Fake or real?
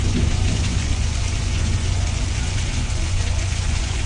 fake